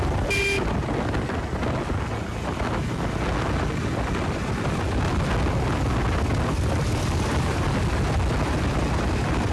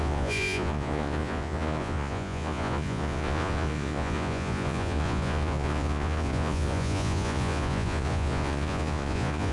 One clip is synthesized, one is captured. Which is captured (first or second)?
first